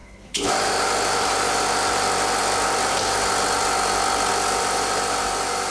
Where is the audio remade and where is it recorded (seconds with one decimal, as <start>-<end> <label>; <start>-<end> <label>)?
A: 0.0-0.5 remade; 0.5-5.7 recorded